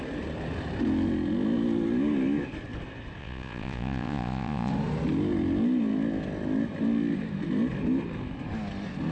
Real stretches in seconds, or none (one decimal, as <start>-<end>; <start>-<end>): 0.0-3.2; 4.7-9.1